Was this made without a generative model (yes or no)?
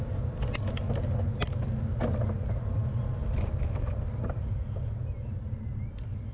yes